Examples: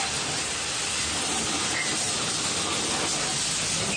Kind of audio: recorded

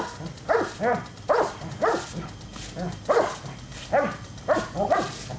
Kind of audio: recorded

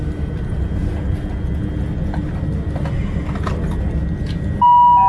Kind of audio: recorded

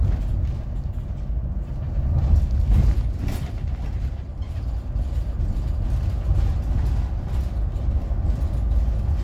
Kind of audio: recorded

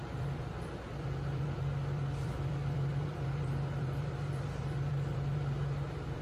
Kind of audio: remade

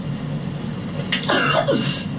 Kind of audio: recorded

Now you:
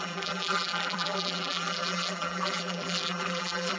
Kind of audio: remade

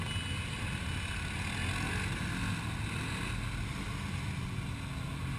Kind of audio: recorded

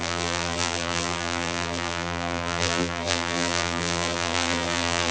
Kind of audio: remade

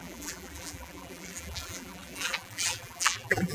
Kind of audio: remade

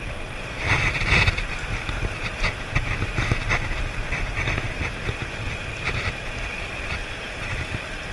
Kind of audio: recorded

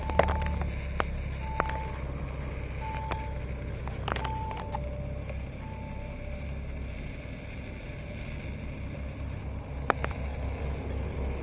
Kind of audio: recorded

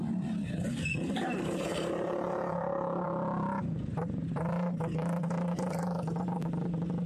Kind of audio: remade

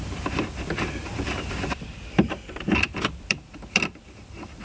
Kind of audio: remade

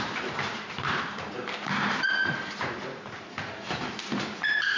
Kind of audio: remade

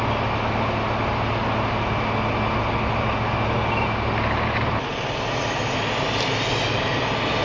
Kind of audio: recorded